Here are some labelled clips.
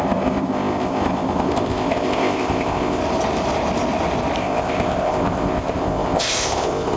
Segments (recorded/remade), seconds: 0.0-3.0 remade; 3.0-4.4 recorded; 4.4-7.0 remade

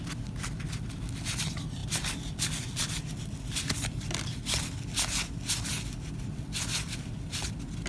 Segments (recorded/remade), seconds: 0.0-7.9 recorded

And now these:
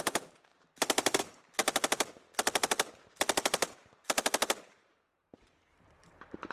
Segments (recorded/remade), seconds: 0.0-1.6 remade; 1.6-4.7 recorded; 4.7-6.5 remade

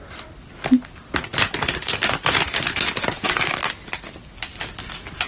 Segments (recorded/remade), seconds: 0.0-5.3 recorded

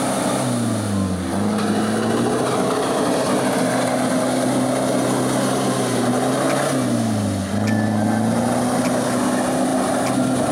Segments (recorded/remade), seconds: 0.0-10.5 recorded

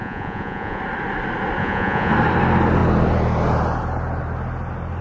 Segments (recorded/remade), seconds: 0.0-0.8 remade; 0.8-1.6 recorded; 1.6-2.1 remade; 2.1-5.0 recorded

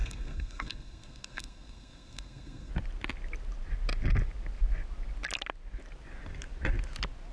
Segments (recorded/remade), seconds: 0.0-2.7 remade; 2.7-7.3 recorded